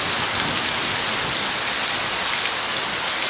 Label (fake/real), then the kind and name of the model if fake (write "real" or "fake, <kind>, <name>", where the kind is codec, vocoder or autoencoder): real